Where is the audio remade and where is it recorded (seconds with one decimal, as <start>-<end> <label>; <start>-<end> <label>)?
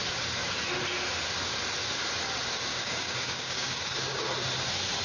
0.0-2.7 recorded; 2.7-4.2 remade; 4.2-5.0 recorded